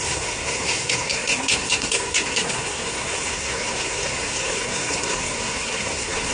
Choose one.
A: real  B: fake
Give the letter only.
B